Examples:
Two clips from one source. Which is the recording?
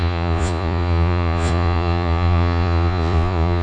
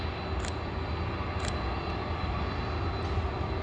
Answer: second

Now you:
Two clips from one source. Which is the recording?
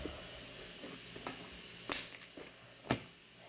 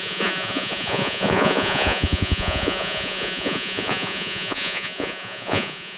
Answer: first